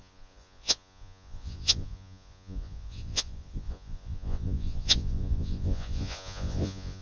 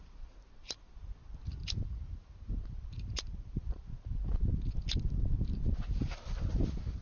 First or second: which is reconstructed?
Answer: first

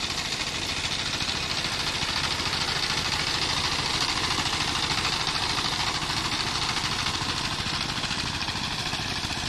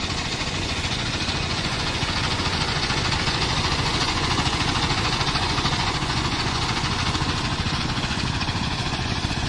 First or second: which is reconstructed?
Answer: second